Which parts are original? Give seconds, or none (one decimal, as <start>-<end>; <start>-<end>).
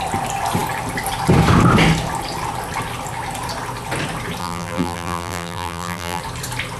0.0-4.4; 6.2-6.8